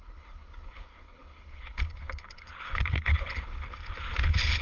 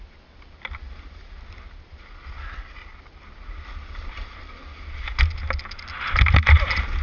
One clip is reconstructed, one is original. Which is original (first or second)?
second